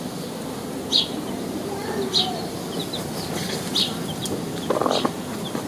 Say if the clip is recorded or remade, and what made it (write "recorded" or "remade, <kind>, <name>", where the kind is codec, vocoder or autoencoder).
recorded